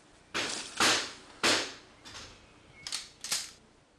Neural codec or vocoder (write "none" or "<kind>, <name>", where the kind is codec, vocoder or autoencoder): none